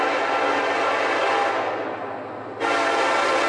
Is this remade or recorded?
recorded